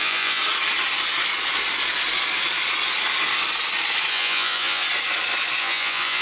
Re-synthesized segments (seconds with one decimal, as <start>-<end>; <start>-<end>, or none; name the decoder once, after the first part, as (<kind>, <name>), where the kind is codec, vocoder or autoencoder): 0.0-0.4 (vocoder, Vocos); 4.1-4.8; 5.6-6.2